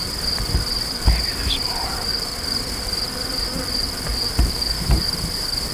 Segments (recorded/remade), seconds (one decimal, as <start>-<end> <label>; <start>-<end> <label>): 0.0-2.1 remade; 2.1-4.3 recorded; 4.3-5.7 remade